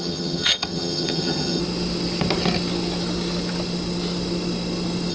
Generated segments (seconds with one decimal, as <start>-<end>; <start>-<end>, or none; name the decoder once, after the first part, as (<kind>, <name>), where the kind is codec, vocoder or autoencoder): 0.0-1.6 (vocoder, HiFi-GAN)